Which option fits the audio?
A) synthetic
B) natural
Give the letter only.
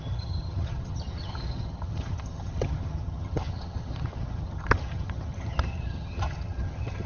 A